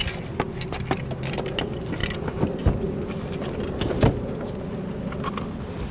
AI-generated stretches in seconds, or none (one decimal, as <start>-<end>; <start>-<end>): none